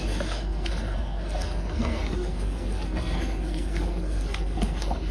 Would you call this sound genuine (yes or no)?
no